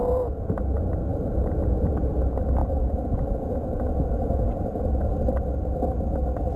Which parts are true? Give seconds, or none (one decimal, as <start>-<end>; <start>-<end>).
0.0-1.1; 1.9-2.6; 5.1-6.6